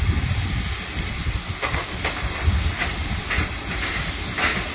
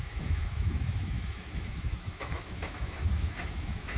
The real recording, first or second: first